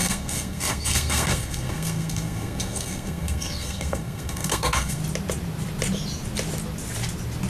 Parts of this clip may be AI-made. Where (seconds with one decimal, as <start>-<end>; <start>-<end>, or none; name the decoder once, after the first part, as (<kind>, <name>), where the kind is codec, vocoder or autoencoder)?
0.0-5.0 (codec, SNAC)